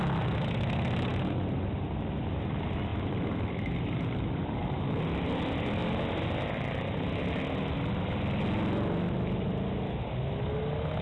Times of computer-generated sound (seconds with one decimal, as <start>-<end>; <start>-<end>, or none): 2.9-5.0